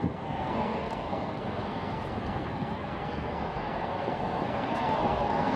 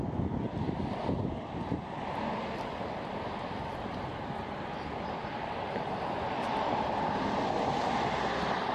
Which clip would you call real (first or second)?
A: second